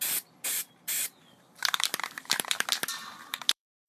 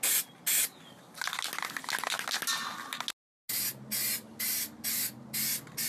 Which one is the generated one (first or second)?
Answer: first